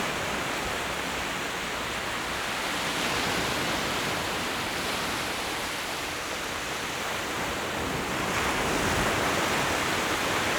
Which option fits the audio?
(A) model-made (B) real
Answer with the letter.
B